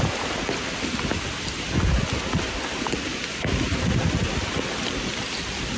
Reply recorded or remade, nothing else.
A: recorded